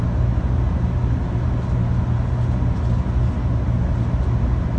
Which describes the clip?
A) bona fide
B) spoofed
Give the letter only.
A